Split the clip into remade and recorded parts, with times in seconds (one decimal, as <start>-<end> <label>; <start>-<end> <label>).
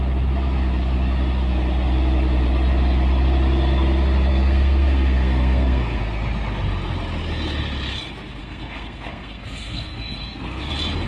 0.0-4.3 recorded; 4.3-6.0 remade; 6.0-8.4 recorded; 8.4-10.7 remade; 10.7-11.1 recorded